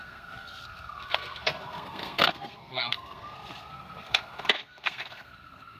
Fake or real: fake